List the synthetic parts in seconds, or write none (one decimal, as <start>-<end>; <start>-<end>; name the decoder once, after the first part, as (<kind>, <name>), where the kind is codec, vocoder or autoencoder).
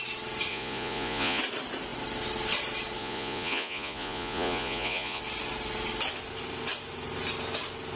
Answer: 0.5-1.4 (vocoder, Vocos); 3.0-5.2